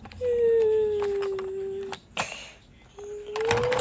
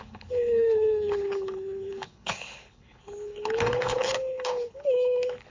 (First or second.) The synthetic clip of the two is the second